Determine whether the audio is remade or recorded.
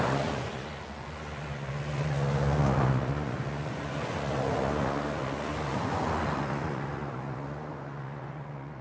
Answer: remade